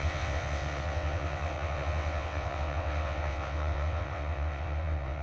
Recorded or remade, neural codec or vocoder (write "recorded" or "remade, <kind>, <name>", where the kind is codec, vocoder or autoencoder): remade, vocoder, WaveNeXt